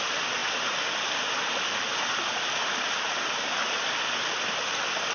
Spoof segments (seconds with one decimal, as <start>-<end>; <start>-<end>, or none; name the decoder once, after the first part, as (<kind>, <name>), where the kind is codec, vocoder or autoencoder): none